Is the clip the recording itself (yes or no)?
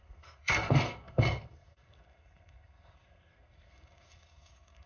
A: no